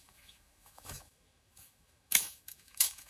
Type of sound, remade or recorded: remade